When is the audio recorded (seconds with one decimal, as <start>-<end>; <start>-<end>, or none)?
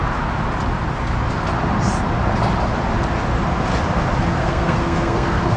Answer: 0.0-4.3